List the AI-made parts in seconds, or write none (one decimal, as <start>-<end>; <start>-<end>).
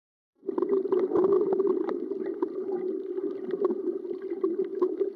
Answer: 4.7-5.2